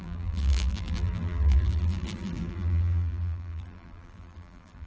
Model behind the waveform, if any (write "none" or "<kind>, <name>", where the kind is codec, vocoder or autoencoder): vocoder, BigVGAN v2